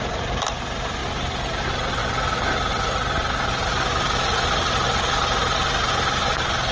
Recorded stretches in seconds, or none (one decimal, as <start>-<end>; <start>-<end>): 0.0-6.7